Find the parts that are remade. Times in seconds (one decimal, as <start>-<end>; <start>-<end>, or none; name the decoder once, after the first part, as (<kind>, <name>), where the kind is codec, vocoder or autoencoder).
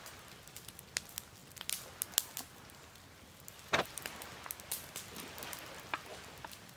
none